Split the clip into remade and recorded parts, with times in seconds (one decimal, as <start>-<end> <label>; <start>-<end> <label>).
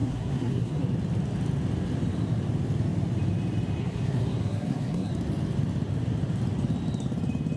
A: 0.0-0.8 remade; 0.8-3.8 recorded; 3.8-5.1 remade; 5.1-7.6 recorded